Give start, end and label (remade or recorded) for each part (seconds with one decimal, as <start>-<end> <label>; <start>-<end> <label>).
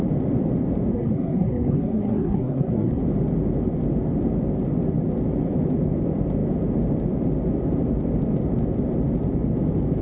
0.0-0.9 recorded; 0.9-3.0 remade; 3.0-10.0 recorded